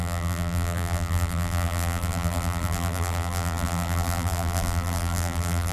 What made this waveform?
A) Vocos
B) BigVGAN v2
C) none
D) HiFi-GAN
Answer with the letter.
B